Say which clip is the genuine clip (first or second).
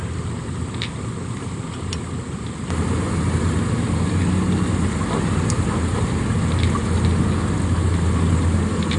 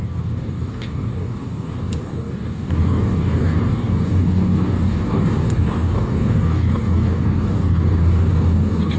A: first